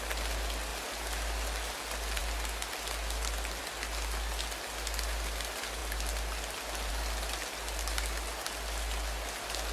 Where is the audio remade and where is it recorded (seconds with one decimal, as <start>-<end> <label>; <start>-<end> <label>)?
0.0-9.7 recorded